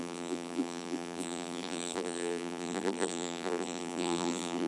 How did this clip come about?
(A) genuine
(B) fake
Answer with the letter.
B